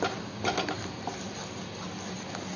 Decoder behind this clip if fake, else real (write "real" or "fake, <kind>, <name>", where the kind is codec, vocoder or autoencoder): real